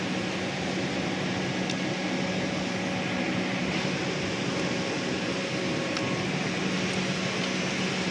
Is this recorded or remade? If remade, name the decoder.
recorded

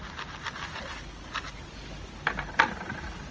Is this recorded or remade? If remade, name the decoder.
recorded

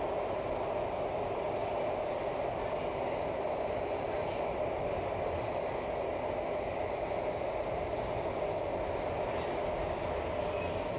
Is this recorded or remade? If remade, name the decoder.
recorded